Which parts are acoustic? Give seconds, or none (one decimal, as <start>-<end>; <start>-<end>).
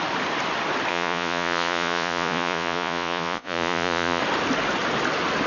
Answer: 0.0-0.9; 4.2-5.5